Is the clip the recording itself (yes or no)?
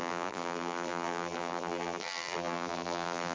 no